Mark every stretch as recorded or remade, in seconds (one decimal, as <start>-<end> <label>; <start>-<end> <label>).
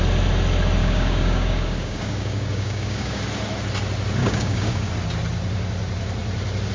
0.0-0.8 recorded; 0.8-3.2 remade; 3.2-4.2 recorded; 4.2-4.9 remade; 4.9-6.7 recorded